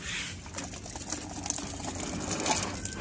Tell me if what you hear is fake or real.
real